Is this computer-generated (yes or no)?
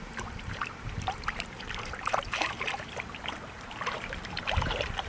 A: yes